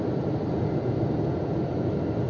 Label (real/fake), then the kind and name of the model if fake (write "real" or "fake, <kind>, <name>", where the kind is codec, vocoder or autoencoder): real